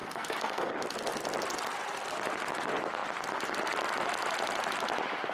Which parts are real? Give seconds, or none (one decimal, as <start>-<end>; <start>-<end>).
0.7-5.3